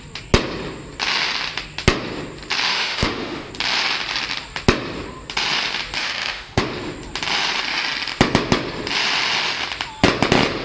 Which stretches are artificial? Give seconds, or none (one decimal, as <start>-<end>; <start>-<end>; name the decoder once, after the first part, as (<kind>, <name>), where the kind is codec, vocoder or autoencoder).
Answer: 2.7-3.5 (autoencoder, DAC-VAE); 6.0-6.6